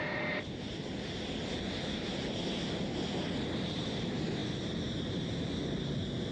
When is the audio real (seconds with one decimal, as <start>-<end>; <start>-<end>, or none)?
0.0-6.3

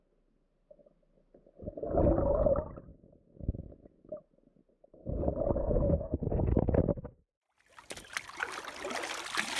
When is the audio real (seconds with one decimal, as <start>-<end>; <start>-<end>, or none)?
0.0-5.6; 6.3-9.6

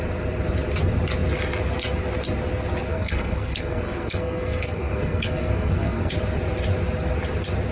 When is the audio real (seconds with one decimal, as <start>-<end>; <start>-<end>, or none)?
0.0-2.9; 6.1-7.7

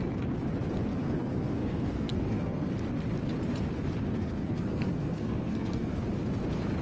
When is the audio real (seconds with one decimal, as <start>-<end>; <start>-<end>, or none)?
0.0-0.9; 2.7-4.2; 6.0-6.8